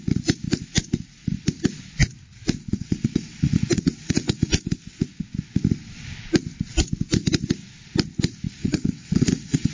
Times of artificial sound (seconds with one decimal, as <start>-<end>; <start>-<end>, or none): 2.6-4.5; 8.6-9.7

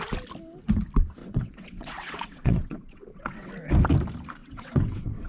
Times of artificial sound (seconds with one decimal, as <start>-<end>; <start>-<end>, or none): 1.2-3.5; 4.4-5.3

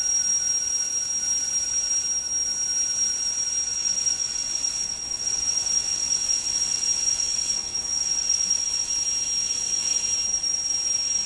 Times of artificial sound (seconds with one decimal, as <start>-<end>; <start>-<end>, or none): 3.7-8.9; 9.4-10.0

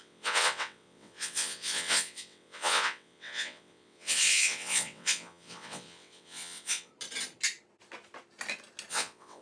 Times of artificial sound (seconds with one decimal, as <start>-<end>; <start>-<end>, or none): 0.0-6.9; 8.9-9.4

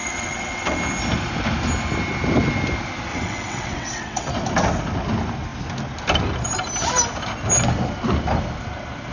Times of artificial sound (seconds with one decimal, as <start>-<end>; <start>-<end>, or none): 0.0-0.8; 3.1-4.3

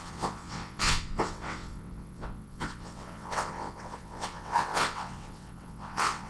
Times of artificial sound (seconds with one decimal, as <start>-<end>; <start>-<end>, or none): 0.0-6.3